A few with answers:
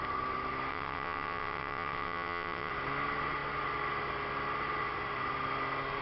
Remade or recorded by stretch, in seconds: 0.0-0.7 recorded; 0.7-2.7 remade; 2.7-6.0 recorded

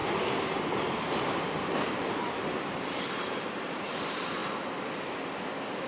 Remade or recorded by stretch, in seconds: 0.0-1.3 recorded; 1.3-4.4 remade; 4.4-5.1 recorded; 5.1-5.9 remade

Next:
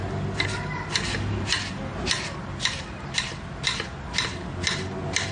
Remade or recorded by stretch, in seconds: 0.0-5.3 recorded

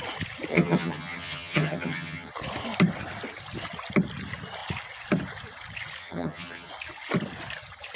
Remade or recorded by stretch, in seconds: 0.0-0.5 recorded; 0.5-2.3 remade; 2.3-6.0 recorded; 6.0-6.7 remade; 6.7-8.0 recorded

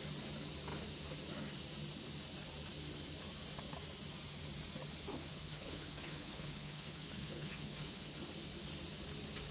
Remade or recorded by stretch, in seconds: 0.0-5.3 recorded; 5.3-8.2 remade; 8.2-9.5 recorded

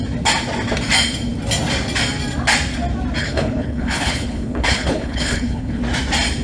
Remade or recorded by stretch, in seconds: 0.0-3.2 recorded; 3.2-5.8 remade; 5.8-6.4 recorded

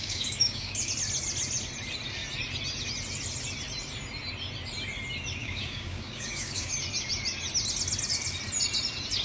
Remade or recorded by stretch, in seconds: 0.0-0.9 remade; 0.9-5.4 recorded; 5.4-6.7 remade; 6.7-9.2 recorded